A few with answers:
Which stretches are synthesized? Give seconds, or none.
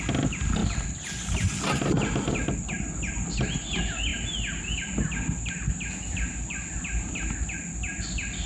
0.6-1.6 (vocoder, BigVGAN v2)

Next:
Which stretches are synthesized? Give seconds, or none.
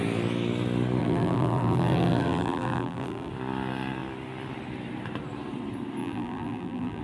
1.0-3.3 (vocoder, BigVGAN v2); 6.0-7.0